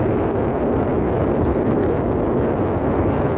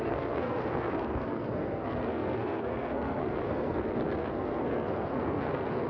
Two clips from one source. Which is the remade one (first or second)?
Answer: second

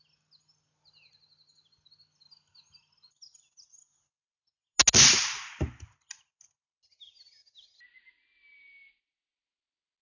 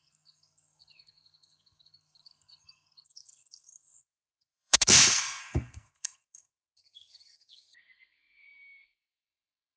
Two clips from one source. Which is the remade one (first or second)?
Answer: second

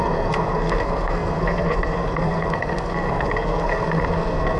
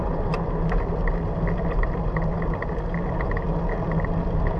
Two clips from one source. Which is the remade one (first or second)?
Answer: first